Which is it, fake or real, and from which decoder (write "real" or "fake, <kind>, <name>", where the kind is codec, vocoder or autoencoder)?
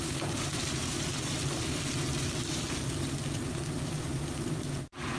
fake, vocoder, BigVGAN v2